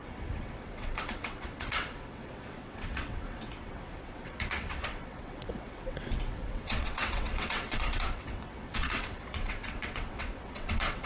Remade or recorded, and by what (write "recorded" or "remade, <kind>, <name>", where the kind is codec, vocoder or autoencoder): remade, vocoder, WaveNeXt